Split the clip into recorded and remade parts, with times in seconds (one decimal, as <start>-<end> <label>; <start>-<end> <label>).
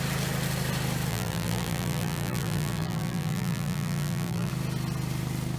0.0-1.1 recorded; 1.1-4.5 remade; 4.5-5.6 recorded